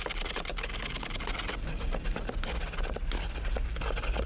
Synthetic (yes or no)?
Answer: no